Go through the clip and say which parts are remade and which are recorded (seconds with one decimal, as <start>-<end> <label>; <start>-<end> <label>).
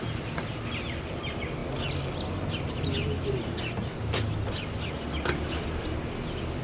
0.0-6.6 recorded